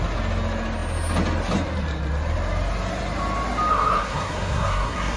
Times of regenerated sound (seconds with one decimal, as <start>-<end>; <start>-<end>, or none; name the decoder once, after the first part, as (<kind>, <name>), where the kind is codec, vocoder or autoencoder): 3.7-5.2 (codec, SNAC)